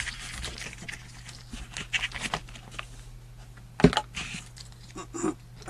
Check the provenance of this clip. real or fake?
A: real